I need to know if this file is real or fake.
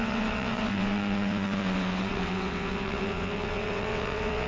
fake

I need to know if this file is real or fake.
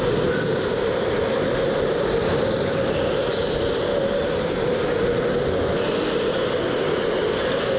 real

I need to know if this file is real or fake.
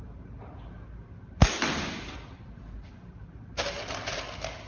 real